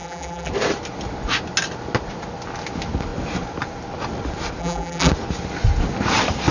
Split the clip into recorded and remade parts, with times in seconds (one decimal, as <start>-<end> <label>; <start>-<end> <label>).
0.0-0.5 remade; 0.5-4.6 recorded; 4.6-5.1 remade; 5.1-6.5 recorded

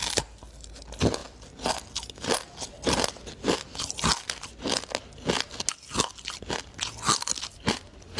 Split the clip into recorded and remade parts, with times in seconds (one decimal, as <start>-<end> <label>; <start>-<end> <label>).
0.0-8.2 recorded